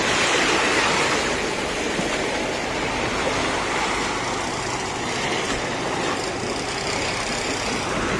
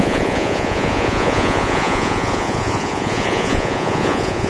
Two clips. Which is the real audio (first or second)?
first